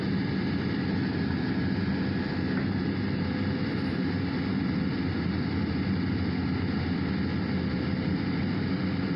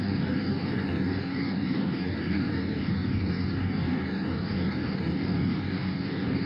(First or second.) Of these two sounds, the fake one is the second